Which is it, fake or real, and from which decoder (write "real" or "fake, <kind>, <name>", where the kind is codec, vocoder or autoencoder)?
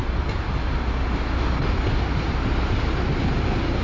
real